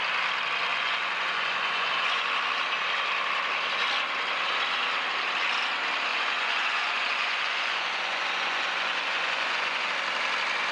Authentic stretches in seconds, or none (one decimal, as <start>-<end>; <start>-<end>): 0.0-0.7; 2.3-6.1; 9.9-10.7

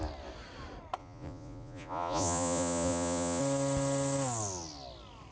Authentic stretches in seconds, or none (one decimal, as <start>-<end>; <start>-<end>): 0.0-1.0; 3.4-5.3

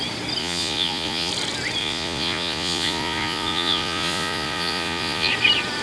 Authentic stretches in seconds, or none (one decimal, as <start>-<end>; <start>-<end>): 0.0-0.4; 1.3-1.8; 5.3-5.8

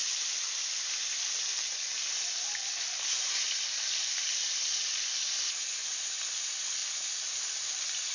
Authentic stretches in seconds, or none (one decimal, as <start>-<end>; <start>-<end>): 0.0-8.1

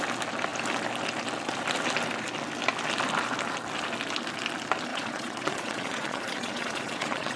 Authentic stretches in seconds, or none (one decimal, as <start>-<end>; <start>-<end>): 0.0-4.9

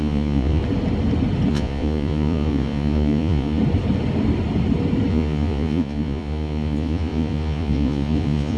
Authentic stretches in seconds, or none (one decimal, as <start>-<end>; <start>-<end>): 0.6-1.5; 3.6-5.1

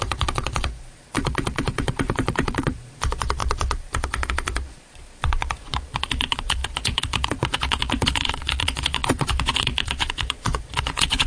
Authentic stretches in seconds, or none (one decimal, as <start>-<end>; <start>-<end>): none